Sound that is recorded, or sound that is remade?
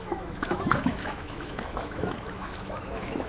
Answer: remade